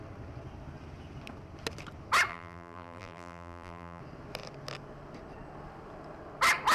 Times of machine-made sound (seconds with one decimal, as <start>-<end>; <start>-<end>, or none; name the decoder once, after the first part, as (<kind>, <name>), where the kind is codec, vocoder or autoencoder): 2.3-4.0 (vocoder, BigVGAN v2)